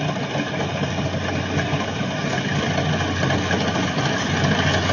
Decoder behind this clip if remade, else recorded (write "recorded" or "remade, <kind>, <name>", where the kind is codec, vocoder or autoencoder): recorded